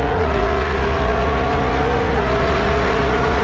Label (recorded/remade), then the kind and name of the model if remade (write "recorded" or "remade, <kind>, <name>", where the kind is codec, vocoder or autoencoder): remade, vocoder, Vocos